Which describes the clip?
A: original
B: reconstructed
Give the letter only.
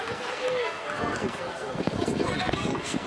B